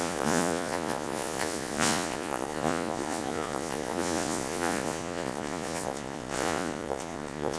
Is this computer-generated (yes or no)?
yes